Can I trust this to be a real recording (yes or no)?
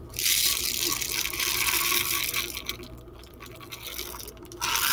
yes